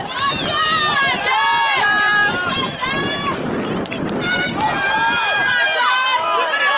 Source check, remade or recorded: recorded